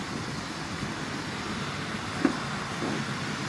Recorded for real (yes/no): yes